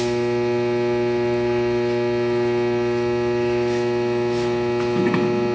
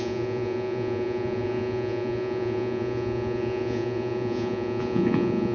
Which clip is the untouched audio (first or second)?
first